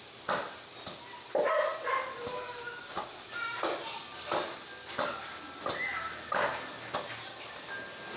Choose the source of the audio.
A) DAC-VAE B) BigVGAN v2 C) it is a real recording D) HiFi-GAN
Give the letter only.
C